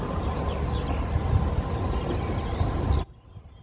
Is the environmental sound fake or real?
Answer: real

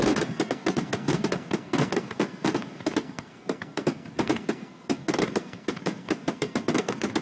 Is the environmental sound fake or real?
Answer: fake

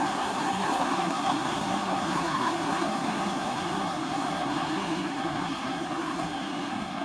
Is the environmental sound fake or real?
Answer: fake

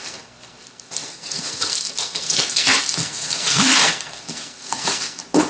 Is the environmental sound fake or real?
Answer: fake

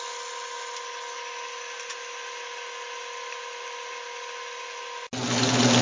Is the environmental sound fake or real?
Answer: real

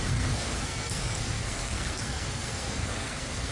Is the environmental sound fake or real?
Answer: fake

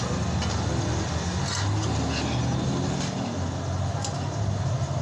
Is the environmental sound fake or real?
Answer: real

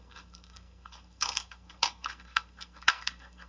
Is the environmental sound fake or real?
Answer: fake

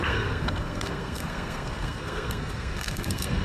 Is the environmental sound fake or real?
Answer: fake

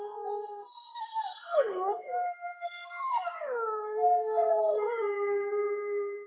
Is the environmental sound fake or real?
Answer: fake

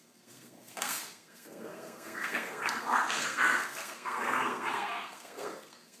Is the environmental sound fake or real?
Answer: fake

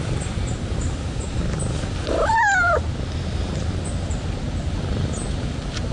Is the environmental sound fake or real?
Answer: real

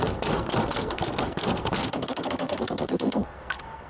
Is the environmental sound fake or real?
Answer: fake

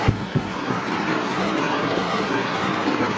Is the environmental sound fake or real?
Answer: fake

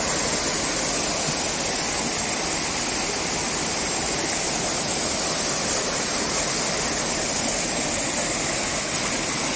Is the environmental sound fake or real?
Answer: real